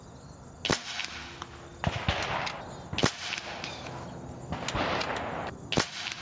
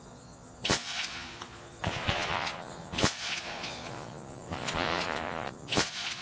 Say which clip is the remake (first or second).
second